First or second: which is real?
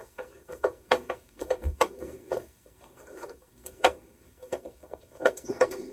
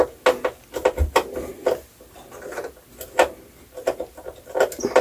second